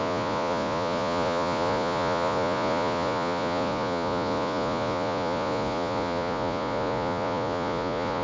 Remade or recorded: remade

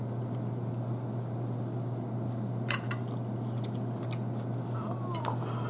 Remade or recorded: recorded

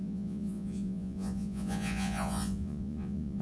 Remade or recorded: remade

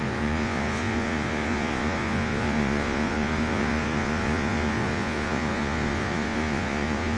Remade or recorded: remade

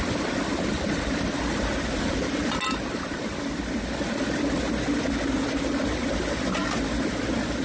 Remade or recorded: recorded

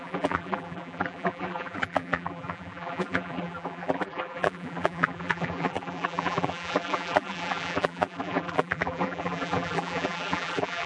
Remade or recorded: remade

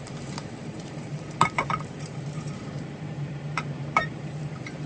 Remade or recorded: remade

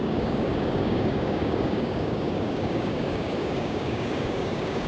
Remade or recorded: remade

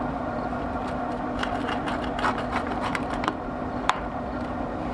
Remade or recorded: remade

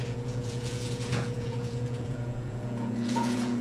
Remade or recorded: remade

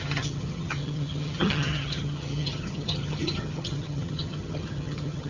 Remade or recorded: remade